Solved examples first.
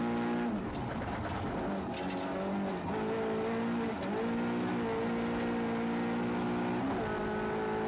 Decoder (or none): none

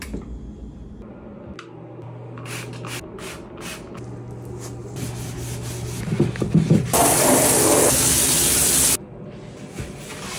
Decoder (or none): none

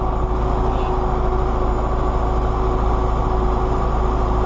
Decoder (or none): none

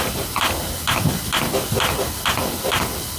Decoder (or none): vocoder, BigVGAN v2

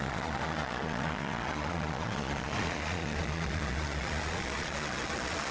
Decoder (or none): vocoder, Vocos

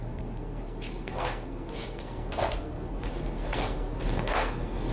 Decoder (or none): codec, SNAC